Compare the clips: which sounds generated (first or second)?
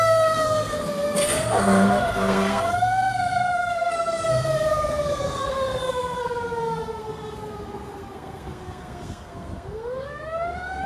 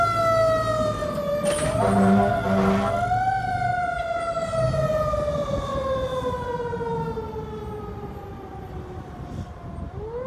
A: first